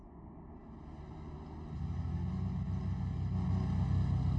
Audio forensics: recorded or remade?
recorded